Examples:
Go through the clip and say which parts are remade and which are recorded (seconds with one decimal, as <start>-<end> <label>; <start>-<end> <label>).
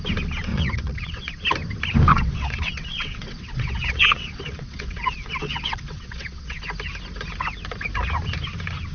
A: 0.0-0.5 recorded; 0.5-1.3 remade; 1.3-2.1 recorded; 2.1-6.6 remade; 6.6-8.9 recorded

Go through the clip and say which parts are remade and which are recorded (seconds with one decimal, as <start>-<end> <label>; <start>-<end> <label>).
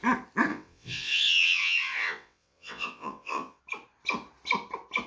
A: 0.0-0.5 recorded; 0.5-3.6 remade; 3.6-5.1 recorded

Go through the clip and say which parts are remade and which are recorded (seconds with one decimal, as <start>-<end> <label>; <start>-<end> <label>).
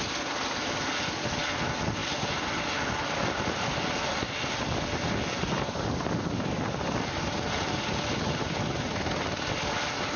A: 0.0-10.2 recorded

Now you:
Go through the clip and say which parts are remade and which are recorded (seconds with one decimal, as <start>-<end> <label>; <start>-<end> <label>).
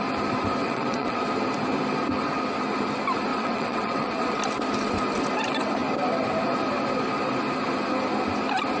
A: 0.0-0.6 recorded; 0.6-1.2 remade; 1.2-3.3 recorded; 3.3-4.4 remade; 4.4-8.8 recorded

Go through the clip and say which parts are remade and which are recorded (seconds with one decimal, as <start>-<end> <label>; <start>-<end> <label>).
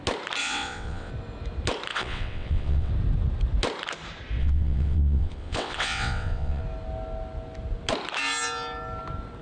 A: 0.0-0.4 recorded; 0.4-1.1 remade; 1.1-1.9 recorded; 1.9-2.9 remade; 2.9-4.4 recorded; 4.4-6.6 remade; 6.6-9.4 recorded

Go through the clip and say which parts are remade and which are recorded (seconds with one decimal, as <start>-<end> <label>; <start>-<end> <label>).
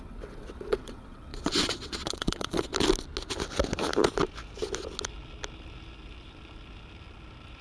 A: 0.0-2.7 remade; 2.7-7.6 recorded